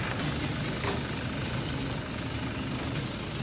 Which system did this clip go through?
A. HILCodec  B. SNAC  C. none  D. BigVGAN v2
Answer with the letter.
C